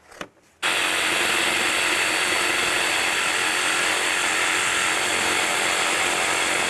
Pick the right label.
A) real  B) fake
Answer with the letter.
A